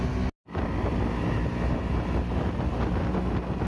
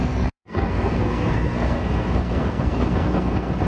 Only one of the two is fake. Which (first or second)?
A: second